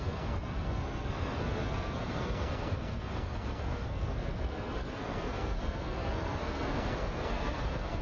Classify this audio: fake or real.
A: fake